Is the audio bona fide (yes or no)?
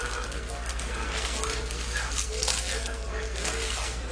no